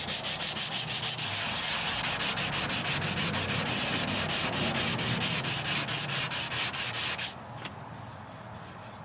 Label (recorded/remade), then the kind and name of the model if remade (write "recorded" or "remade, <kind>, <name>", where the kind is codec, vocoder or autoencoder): recorded